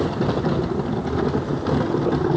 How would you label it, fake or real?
real